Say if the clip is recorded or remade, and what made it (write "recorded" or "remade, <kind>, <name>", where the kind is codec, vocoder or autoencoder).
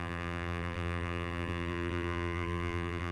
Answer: remade, vocoder, BigVGAN v2